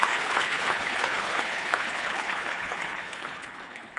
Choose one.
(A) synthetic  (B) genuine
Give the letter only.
A